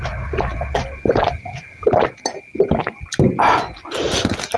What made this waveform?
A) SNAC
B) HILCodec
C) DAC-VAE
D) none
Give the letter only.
D